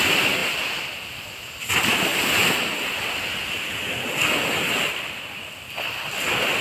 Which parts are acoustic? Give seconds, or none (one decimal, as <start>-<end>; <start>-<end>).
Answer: 0.0-0.4; 1.7-6.6